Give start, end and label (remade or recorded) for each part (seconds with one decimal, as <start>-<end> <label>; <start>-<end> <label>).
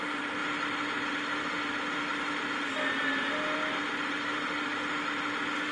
0.0-5.7 recorded